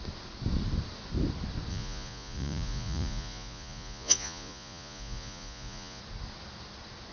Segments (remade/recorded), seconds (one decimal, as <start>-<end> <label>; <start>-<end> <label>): 0.0-1.7 recorded; 1.7-6.0 remade; 6.0-7.1 recorded